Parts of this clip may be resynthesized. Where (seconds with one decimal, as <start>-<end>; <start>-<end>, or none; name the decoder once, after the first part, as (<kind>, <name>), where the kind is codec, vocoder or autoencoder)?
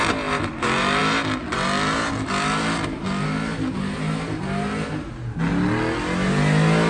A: none